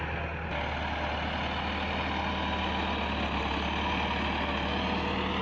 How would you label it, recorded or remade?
recorded